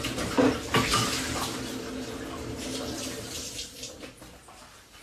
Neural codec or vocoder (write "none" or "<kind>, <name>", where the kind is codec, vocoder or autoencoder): none